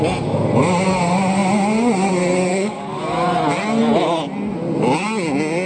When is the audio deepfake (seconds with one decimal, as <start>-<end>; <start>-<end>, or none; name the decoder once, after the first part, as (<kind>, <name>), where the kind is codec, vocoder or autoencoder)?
2.5-3.0 (codec, DAC)